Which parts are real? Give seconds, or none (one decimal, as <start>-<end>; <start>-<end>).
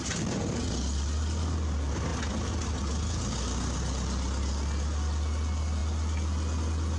0.0-7.0